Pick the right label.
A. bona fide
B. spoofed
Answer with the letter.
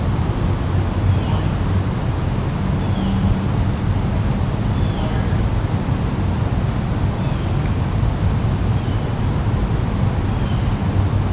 A